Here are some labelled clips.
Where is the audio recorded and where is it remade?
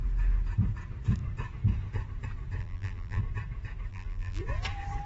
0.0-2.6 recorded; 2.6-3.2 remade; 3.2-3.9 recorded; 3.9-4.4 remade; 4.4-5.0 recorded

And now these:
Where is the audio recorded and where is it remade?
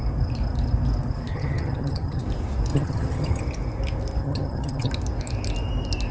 0.0-1.3 recorded; 1.3-2.2 remade; 2.2-2.7 recorded; 2.7-3.4 remade; 3.4-4.2 recorded; 4.2-4.9 remade; 4.9-6.1 recorded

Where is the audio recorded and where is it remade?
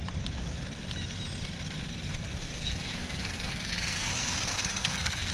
0.0-2.1 recorded; 2.1-5.3 remade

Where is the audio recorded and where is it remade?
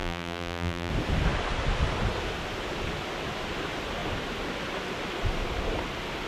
0.0-0.9 remade; 0.9-6.3 recorded